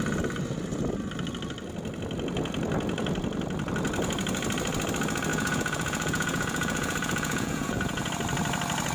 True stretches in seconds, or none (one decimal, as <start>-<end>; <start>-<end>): 0.0-5.3; 8.1-8.9